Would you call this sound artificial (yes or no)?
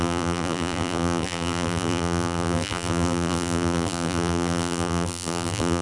yes